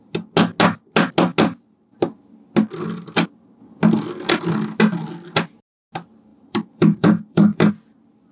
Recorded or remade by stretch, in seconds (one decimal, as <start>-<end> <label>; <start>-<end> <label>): 0.0-6.3 recorded; 6.3-7.7 remade; 7.7-8.3 recorded